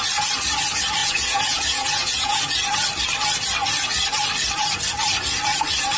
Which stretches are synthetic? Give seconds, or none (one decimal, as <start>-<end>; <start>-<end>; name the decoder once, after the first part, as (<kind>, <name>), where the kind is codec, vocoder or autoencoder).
1.0-2.4 (vocoder, Vocos)